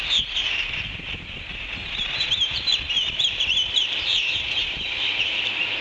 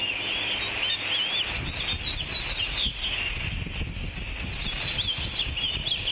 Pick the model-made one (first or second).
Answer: first